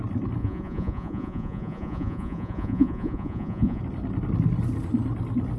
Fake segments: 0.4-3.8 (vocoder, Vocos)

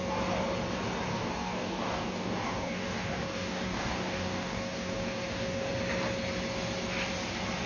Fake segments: 1.1-5.7 (codec, DAC)

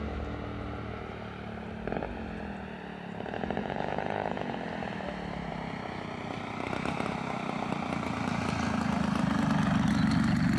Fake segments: 3.6-4.5 (vocoder, Vocos)

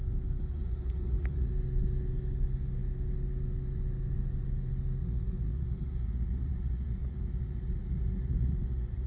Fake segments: 0.5-1.5 (vocoder, Vocos); 5.0-9.1

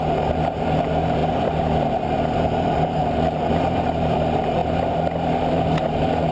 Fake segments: 0.0-4.6 (vocoder, BigVGAN v2); 5.5-6.3

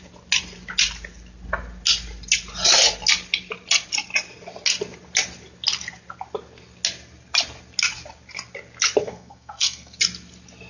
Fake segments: 9.0-10.0 (codec, SNAC)

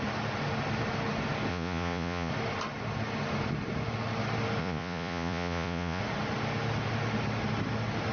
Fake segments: 1.5-2.3 (vocoder, Vocos); 4.6-6.0